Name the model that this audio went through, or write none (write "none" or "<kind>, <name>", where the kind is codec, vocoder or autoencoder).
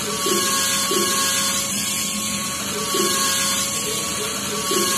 none